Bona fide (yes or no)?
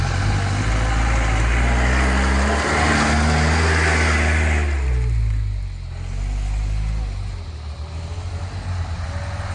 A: yes